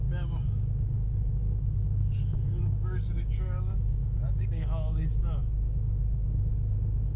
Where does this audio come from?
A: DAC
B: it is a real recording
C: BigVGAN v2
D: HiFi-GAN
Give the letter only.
A